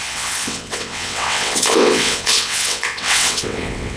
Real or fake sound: fake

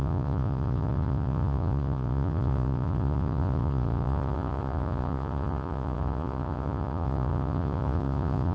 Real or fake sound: fake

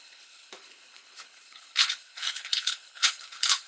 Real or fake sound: fake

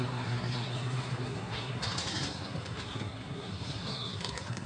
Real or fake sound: fake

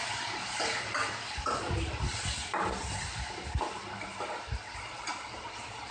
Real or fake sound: real